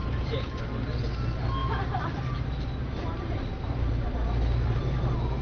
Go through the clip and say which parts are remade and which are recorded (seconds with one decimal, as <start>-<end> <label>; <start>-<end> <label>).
0.0-0.6 remade; 0.6-1.6 recorded; 1.6-4.8 remade; 4.8-5.4 recorded